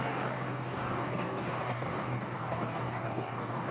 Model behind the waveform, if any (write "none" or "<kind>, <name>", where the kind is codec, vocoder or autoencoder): codec, DAC